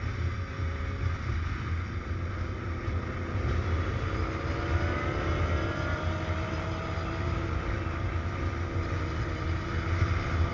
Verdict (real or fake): real